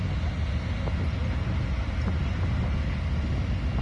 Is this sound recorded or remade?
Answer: recorded